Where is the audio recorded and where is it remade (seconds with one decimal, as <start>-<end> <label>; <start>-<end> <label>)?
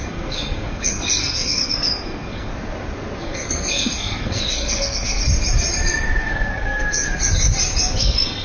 0.0-2.5 remade; 2.5-3.2 recorded; 3.2-5.2 remade; 5.2-6.2 recorded; 6.2-7.2 remade; 7.2-8.0 recorded; 8.0-8.4 remade